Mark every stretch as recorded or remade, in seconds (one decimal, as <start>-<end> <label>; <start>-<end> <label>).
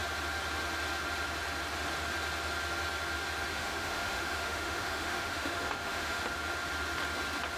0.0-3.5 recorded; 3.5-6.2 remade; 6.2-7.6 recorded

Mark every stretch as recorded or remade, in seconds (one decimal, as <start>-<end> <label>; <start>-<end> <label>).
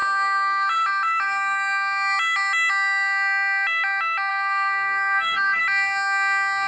0.0-4.3 recorded; 4.3-5.6 remade; 5.6-6.7 recorded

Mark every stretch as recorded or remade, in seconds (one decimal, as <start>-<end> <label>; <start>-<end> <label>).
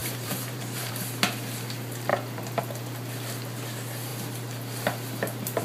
0.0-0.9 remade; 0.9-2.1 recorded; 2.1-2.6 remade; 2.6-5.6 recorded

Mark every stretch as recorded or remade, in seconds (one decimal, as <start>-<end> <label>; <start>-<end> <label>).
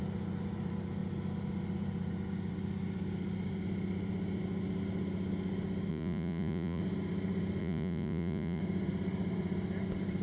0.0-5.9 recorded; 5.9-6.8 remade; 6.8-7.6 recorded; 7.6-8.6 remade; 8.6-10.2 recorded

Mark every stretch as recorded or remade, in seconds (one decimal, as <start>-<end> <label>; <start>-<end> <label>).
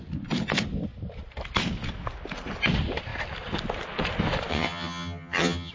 0.0-4.5 recorded; 4.5-5.7 remade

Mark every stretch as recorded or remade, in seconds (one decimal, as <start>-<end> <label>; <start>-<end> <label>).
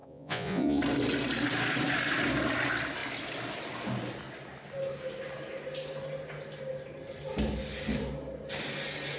0.0-0.8 remade; 0.8-9.2 recorded